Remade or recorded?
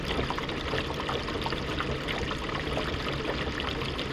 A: recorded